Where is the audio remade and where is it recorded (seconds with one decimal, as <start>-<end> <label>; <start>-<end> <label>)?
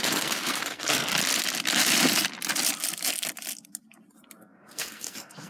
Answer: 0.0-1.1 remade; 1.1-4.4 recorded; 4.4-5.5 remade